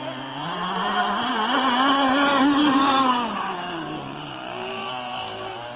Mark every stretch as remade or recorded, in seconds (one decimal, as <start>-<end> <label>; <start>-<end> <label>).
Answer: 0.0-2.6 recorded; 2.6-4.9 remade; 4.9-5.8 recorded